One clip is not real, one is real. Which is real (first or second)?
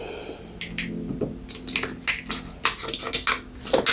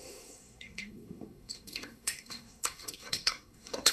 first